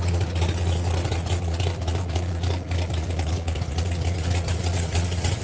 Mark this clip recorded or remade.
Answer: remade